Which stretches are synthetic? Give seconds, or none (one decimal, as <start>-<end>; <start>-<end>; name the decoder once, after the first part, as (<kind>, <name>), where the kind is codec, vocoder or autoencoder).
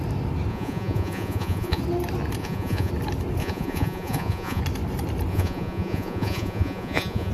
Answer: 0.5-1.8 (vocoder, Vocos); 2.4-2.9; 3.4-4.6; 5.3-7.3